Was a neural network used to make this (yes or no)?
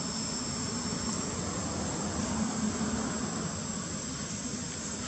no